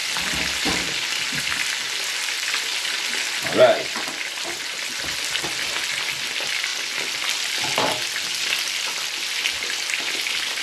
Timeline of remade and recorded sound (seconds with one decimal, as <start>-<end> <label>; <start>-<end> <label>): 0.0-10.6 recorded